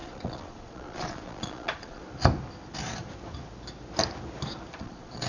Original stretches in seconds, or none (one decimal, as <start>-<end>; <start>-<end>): 2.0-4.8